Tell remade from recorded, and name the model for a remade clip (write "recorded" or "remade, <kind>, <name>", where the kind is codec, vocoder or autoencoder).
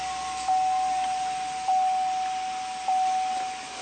recorded